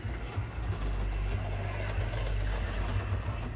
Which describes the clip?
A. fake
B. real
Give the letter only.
B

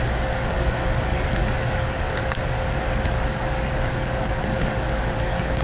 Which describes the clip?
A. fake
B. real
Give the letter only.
A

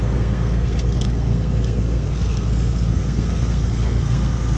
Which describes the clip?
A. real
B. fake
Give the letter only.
B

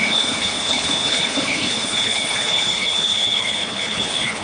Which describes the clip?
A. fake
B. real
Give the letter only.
A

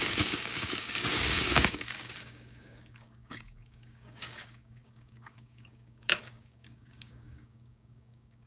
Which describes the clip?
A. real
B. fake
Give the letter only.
B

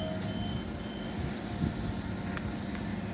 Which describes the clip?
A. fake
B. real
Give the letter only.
B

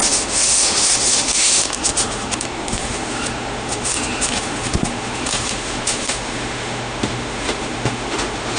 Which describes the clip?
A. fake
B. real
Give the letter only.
A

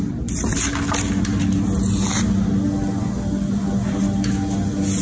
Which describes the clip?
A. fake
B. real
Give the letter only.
B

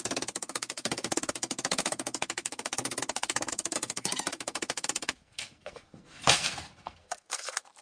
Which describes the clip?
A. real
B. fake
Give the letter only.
B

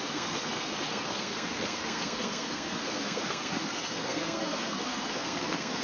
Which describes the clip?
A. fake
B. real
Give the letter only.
A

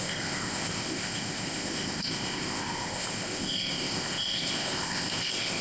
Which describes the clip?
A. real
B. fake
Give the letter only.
B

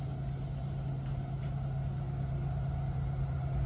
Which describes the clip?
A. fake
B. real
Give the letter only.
B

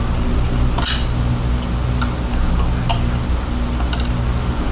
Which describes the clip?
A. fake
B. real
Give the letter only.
B